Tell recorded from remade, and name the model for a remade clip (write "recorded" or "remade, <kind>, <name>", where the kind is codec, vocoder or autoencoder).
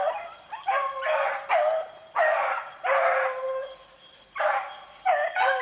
recorded